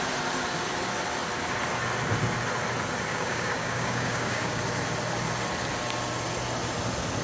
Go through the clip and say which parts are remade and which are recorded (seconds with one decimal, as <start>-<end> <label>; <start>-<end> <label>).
0.0-3.1 recorded; 3.1-4.6 remade; 4.6-7.2 recorded